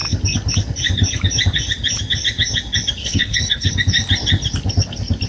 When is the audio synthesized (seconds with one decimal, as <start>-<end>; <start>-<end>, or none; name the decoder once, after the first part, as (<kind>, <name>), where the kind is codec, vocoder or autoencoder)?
3.0-3.7 (codec, HILCodec)